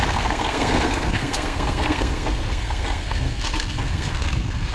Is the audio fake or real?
fake